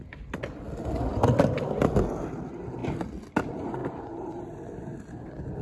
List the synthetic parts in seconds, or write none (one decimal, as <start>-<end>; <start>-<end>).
none